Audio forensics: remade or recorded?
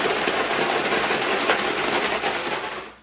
recorded